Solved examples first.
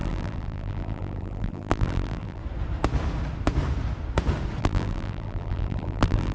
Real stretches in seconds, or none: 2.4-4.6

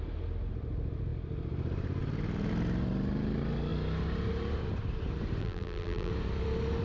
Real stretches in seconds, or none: 0.0-5.4; 6.1-6.8

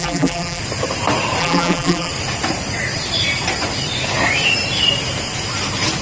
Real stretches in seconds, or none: 0.6-1.4; 2.1-6.0

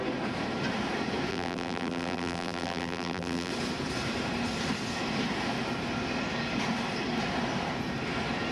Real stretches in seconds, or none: 0.0-1.3; 3.5-8.5

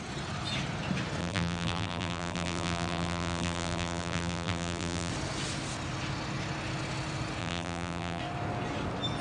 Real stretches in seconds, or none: 0.0-1.2; 5.1-7.4; 8.2-9.2